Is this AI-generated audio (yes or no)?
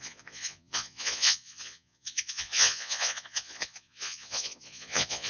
yes